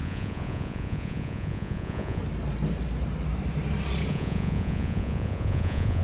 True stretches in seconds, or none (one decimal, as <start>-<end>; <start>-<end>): 2.2-4.1